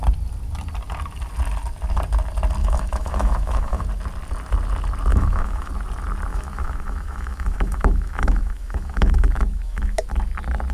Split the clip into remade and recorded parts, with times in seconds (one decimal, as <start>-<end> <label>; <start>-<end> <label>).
0.0-2.6 recorded; 2.6-3.8 remade; 3.8-5.1 recorded; 5.1-5.7 remade; 5.7-6.3 recorded; 6.3-10.1 remade; 10.1-10.7 recorded